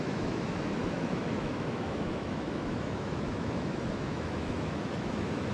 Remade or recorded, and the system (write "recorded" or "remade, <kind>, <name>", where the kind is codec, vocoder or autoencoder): remade, autoencoder, DAC-VAE